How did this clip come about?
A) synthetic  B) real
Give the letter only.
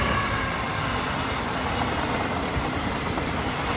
B